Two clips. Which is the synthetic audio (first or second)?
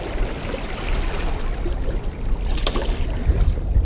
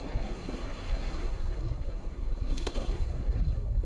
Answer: second